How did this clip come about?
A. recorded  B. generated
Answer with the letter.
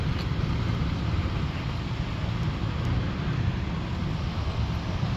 A